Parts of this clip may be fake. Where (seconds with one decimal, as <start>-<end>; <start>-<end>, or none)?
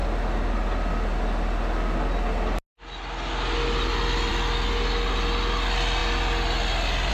none